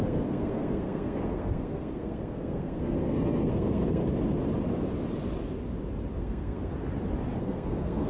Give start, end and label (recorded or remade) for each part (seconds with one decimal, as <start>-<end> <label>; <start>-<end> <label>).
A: 0.0-4.0 remade; 4.0-6.2 recorded; 6.2-6.7 remade; 6.7-7.4 recorded; 7.4-8.1 remade